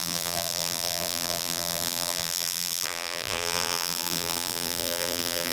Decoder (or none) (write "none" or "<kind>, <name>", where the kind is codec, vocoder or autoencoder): vocoder, BigVGAN v2